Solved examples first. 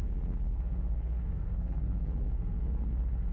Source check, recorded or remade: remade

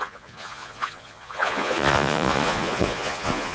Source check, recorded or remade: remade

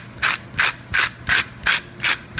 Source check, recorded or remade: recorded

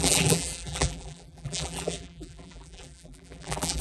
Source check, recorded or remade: remade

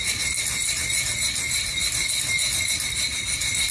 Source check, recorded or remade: recorded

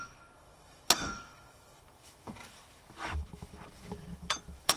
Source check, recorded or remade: remade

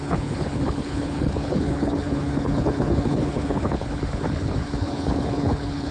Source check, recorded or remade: remade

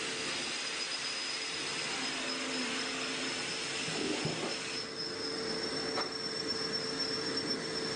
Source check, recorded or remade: recorded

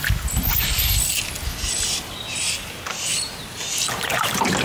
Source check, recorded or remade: recorded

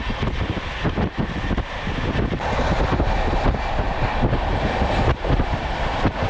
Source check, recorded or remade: remade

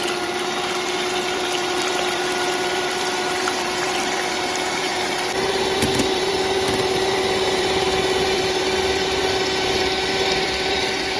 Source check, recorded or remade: remade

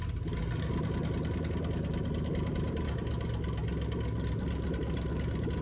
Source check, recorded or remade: recorded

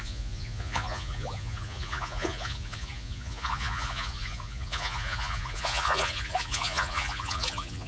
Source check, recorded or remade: remade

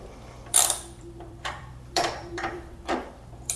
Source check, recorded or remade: remade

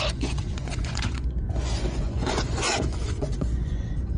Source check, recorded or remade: remade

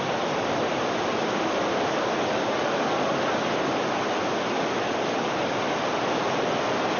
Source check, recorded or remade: recorded